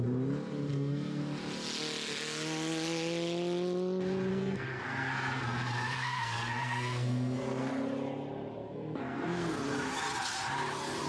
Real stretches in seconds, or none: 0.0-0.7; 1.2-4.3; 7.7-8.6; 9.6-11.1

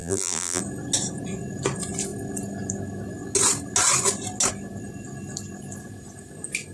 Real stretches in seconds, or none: 0.6-6.7

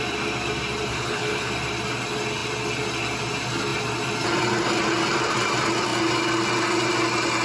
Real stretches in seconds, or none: 0.0-0.9; 1.5-7.4

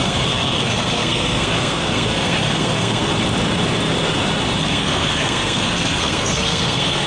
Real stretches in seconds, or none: 3.1-4.6

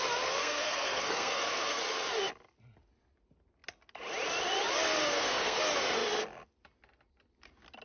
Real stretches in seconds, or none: 0.0-0.4; 1.8-5.0; 5.6-7.8

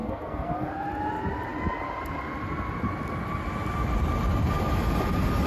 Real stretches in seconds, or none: 0.7-5.5